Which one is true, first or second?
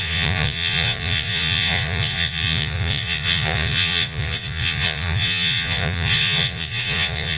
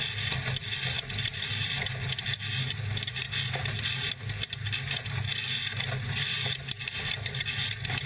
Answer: second